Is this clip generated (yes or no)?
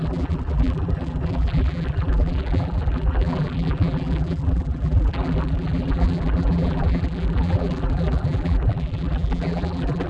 yes